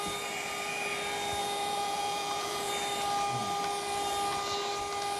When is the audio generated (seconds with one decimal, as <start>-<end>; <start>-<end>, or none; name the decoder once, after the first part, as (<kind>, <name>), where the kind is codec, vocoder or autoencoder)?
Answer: 1.4-2.7 (vocoder, Vocos)